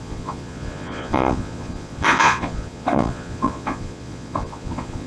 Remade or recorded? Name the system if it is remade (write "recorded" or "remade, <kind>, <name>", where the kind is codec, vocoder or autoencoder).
remade, vocoder, Vocos